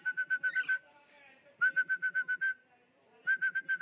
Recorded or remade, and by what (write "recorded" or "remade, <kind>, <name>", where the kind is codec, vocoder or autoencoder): recorded